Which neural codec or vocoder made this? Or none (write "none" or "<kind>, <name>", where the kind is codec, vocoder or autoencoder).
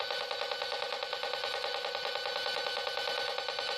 none